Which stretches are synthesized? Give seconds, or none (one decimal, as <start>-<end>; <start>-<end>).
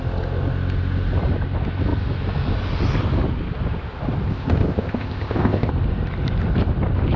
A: 4.3-5.7